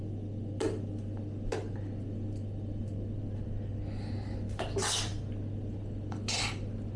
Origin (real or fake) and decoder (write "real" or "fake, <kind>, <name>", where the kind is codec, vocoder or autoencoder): real